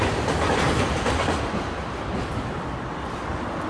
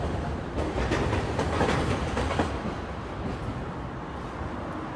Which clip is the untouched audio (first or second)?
second